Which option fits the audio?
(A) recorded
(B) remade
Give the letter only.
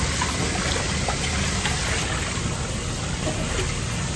A